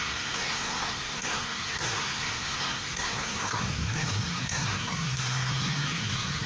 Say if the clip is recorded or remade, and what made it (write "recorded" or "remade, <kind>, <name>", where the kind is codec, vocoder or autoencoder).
remade, codec, SNAC